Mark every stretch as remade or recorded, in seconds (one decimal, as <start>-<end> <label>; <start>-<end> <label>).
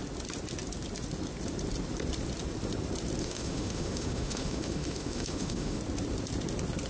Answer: 0.0-3.2 recorded; 3.2-5.8 remade; 5.8-6.9 recorded